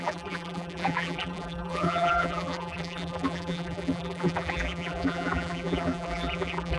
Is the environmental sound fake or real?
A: fake